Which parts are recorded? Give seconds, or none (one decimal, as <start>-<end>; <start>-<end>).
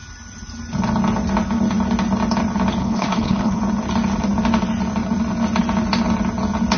0.0-2.8; 3.6-6.8